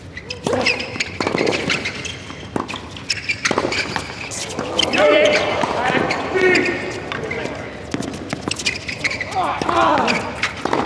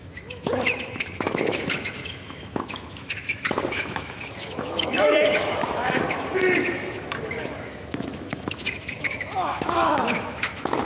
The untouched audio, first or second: first